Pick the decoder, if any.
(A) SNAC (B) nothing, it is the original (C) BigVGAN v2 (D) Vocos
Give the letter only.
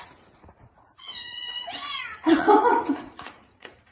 D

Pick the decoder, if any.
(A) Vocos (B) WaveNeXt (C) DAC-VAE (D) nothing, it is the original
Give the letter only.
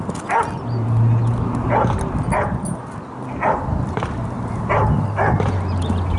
D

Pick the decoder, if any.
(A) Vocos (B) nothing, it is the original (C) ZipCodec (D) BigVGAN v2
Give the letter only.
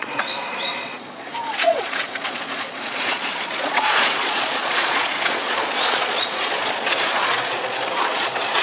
A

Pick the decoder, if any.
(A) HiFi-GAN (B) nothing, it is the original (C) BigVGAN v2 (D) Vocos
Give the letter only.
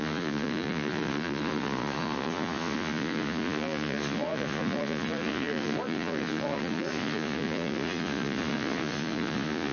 D